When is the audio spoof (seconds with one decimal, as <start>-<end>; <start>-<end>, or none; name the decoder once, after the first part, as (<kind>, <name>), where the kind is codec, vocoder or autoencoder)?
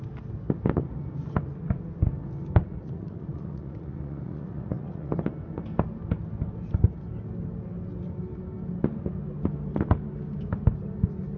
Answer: 2.6-5.1 (vocoder, Vocos)